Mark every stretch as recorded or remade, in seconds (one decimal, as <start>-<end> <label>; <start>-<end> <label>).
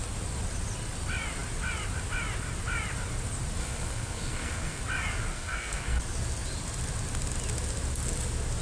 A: 0.0-3.6 recorded; 3.6-4.8 remade; 4.8-5.3 recorded; 5.3-6.0 remade; 6.0-8.6 recorded